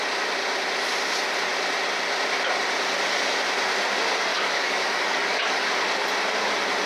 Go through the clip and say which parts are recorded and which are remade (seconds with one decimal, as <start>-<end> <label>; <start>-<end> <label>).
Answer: 0.0-4.3 recorded; 4.3-5.7 remade; 5.7-6.9 recorded